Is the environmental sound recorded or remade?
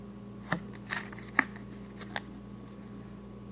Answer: recorded